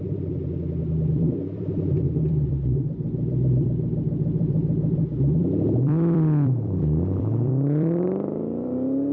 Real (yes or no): no